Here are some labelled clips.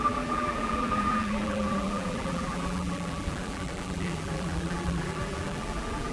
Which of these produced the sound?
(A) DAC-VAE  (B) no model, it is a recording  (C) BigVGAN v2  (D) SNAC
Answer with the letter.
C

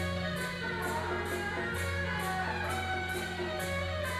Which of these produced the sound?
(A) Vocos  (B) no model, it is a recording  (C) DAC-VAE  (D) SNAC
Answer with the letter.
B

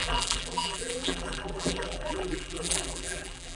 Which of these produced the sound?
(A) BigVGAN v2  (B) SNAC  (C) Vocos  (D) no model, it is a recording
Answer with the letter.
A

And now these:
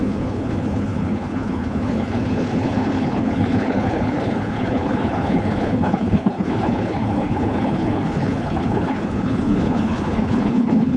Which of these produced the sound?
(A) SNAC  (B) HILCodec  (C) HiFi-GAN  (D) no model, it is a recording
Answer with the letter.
B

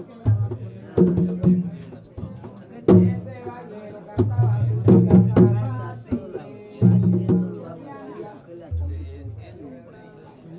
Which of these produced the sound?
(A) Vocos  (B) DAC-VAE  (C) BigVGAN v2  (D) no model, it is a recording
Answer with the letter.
D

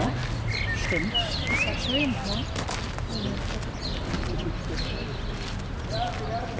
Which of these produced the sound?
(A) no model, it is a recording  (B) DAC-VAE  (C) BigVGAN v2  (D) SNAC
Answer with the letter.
A